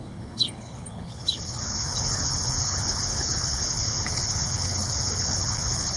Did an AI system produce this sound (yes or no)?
yes